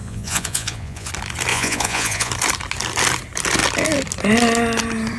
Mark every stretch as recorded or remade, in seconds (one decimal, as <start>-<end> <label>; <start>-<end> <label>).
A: 0.0-1.1 remade; 1.1-1.5 recorded; 1.5-2.3 remade; 2.3-5.2 recorded